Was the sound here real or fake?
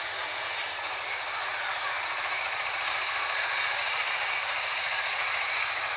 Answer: fake